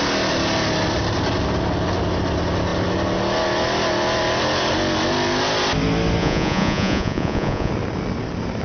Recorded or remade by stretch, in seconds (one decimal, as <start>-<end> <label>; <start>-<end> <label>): 0.0-6.2 recorded; 6.2-7.7 remade; 7.7-8.6 recorded